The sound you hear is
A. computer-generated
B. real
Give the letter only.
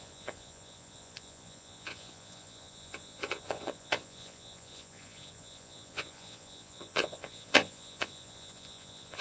A